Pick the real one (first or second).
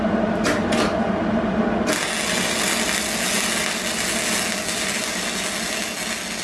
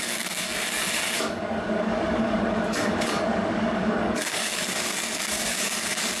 first